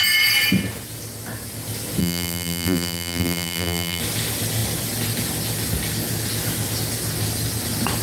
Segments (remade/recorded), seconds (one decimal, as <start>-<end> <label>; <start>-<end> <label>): 0.0-2.0 recorded; 2.0-4.0 remade; 4.0-8.0 recorded